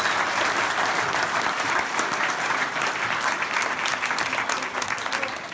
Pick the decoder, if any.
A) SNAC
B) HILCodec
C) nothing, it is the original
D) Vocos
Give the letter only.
C